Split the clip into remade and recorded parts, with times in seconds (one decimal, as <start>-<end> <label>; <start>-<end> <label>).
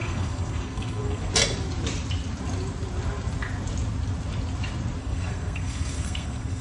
0.0-1.3 remade; 1.3-5.0 recorded; 5.0-6.6 remade